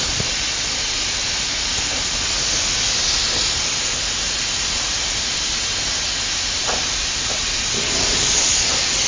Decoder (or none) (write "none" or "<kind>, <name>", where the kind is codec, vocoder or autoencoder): none